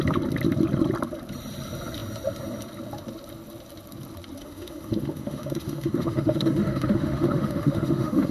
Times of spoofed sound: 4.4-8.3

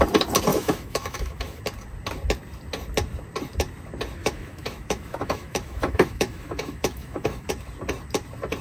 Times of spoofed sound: 0.5-1.6; 4.2-7.5